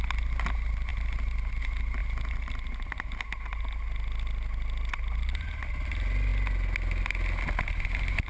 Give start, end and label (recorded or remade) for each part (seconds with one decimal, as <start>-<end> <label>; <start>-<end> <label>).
0.0-8.3 recorded